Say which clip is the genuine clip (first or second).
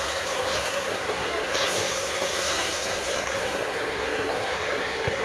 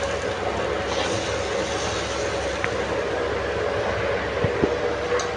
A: second